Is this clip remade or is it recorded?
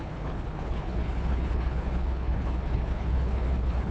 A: remade